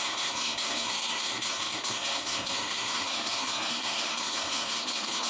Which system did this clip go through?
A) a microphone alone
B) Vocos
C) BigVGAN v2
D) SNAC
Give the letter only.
D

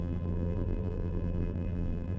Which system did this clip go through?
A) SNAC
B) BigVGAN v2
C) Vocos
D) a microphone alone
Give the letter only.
B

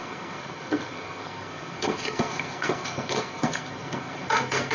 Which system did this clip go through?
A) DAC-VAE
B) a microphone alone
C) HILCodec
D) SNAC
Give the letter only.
D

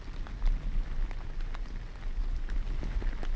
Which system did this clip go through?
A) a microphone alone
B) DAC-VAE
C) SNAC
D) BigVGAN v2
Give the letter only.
A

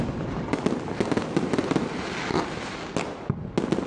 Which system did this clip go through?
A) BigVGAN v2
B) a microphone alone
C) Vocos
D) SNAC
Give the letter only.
B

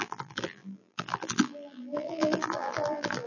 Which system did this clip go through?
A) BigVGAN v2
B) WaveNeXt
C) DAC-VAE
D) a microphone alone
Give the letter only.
A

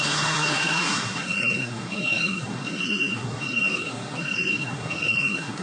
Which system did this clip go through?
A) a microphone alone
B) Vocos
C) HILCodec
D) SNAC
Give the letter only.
D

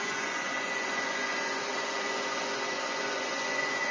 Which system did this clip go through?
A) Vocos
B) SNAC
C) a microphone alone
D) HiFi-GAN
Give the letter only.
A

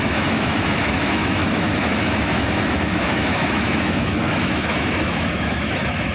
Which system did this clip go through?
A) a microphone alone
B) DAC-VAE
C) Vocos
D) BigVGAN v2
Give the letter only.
B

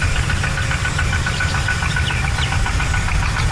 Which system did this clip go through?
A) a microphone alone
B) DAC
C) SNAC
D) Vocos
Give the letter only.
A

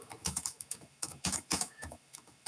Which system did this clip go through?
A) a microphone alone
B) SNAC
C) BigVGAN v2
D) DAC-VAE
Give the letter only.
D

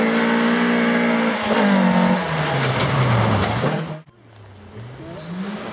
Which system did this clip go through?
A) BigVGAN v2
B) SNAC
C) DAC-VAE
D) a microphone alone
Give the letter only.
D